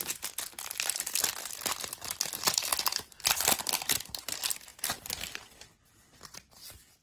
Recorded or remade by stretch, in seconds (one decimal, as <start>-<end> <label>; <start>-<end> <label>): 0.0-7.0 recorded